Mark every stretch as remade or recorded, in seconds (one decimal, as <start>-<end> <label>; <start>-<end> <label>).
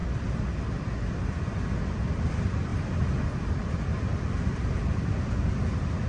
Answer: 0.0-6.1 recorded